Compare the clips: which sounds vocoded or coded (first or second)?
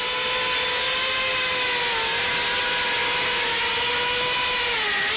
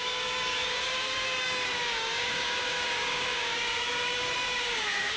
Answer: second